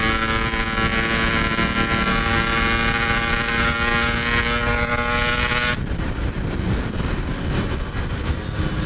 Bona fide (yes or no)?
yes